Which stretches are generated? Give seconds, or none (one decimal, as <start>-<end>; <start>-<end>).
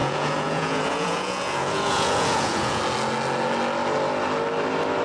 0.0-2.8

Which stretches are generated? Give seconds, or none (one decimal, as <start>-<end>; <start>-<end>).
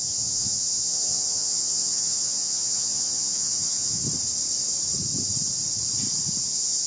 0.0-4.0; 6.4-6.9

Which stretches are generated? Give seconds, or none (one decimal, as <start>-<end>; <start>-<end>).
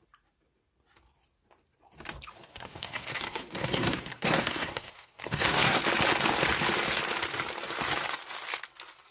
2.5-5.8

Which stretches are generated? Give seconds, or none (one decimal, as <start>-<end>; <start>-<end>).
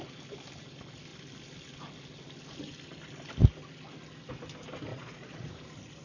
4.9-5.5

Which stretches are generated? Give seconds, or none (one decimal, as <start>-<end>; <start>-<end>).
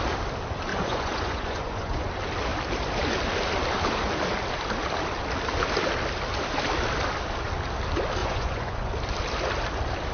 0.7-2.1; 8.2-8.9